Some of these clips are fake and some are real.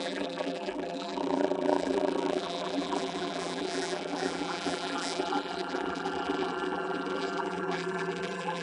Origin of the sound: fake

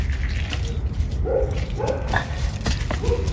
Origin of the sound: real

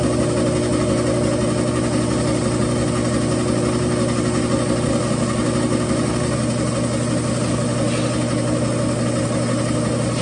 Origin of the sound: real